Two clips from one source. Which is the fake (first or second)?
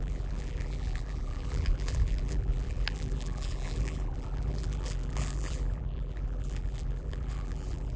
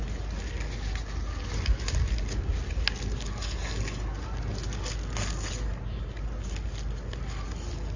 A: first